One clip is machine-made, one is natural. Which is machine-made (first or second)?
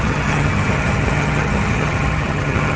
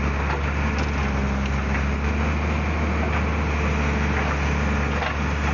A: first